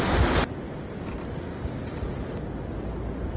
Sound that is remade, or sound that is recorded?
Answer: recorded